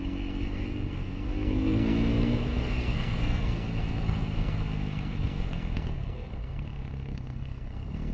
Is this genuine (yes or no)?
no